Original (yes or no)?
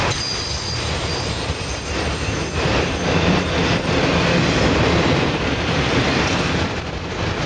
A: no